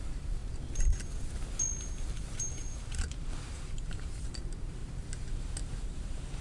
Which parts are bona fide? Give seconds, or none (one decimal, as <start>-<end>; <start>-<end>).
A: 0.4-1.8; 4.8-5.8